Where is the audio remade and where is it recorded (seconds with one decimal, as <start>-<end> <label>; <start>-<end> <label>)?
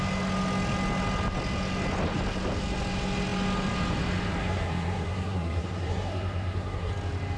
0.0-4.4 recorded; 4.4-6.9 remade; 6.9-7.4 recorded